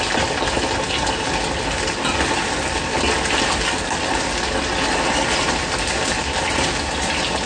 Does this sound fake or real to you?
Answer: real